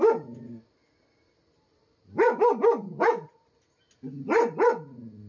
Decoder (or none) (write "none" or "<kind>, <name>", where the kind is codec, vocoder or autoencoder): none